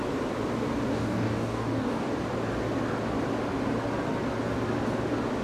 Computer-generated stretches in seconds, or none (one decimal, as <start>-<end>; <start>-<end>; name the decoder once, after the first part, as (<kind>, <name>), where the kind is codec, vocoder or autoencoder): 0.9-2.1 (codec, DAC)